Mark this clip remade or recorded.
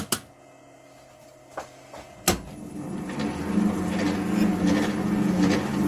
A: recorded